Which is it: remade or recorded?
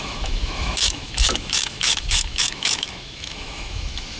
remade